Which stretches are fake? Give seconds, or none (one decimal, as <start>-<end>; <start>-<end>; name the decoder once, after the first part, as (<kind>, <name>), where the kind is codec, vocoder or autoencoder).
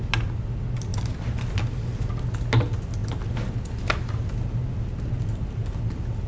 none